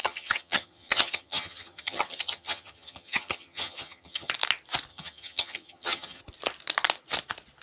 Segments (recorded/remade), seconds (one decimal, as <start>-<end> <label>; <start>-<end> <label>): 0.0-4.3 remade; 4.3-4.9 recorded; 4.9-6.2 remade; 6.2-7.6 recorded